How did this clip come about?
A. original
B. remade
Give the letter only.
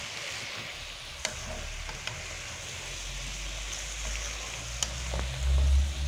A